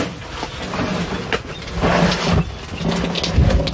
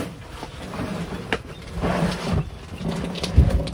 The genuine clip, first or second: first